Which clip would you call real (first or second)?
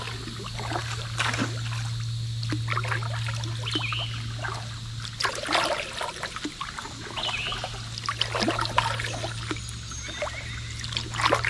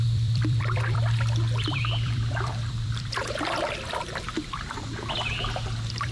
first